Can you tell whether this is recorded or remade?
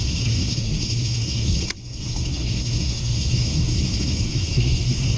remade